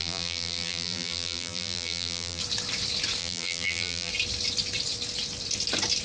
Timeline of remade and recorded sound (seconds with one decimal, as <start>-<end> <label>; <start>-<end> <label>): 0.0-2.4 remade; 2.4-3.2 recorded; 3.2-4.1 remade; 4.1-6.0 recorded